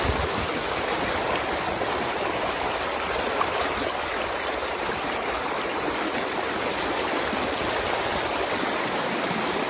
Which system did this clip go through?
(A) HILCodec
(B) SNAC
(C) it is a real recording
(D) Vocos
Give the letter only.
C